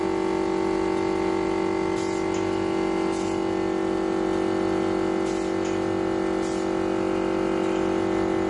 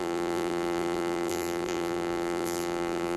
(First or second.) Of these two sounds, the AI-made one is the second